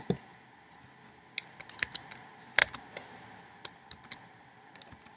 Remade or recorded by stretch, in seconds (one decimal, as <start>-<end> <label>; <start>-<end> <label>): 0.0-5.2 recorded